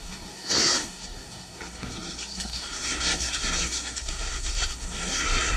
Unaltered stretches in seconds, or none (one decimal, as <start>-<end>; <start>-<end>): none